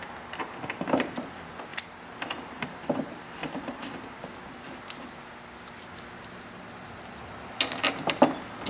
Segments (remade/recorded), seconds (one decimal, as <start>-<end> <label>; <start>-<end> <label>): 0.0-1.7 recorded; 1.7-2.8 remade; 2.8-3.4 recorded; 3.4-4.2 remade; 4.2-8.7 recorded